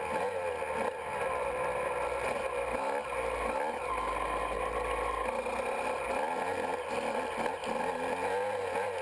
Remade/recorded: recorded